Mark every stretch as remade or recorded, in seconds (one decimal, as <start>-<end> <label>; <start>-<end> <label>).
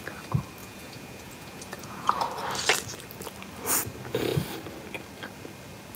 0.0-0.6 recorded; 0.6-2.2 remade; 2.2-6.0 recorded